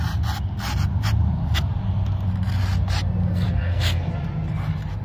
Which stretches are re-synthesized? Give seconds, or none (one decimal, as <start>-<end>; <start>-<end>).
3.3-4.1